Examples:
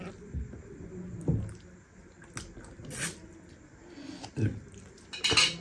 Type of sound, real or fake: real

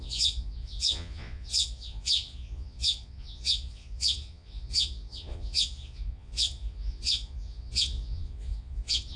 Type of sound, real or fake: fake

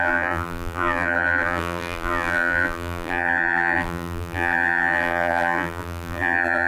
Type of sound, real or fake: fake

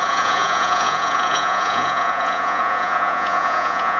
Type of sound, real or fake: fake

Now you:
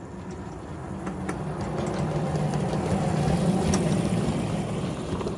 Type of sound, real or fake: real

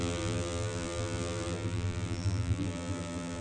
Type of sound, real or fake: fake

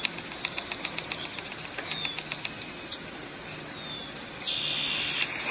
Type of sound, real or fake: real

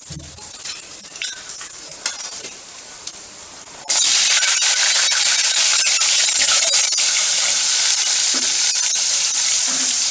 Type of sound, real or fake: fake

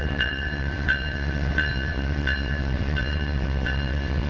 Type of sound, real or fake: fake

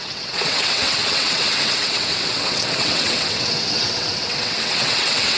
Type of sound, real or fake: fake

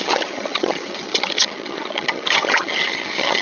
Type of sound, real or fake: fake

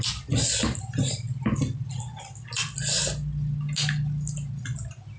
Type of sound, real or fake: real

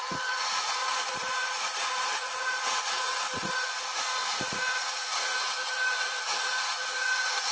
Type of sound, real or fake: fake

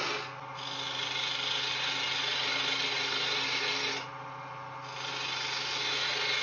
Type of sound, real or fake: real